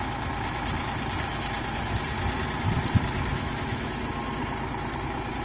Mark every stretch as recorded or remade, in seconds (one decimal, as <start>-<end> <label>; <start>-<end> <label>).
0.0-3.3 recorded; 3.3-4.0 remade; 4.0-5.4 recorded